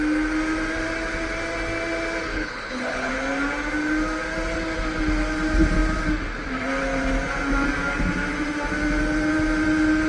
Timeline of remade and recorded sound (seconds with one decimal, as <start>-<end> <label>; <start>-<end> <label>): 0.0-2.3 recorded; 2.3-3.1 remade; 3.1-10.1 recorded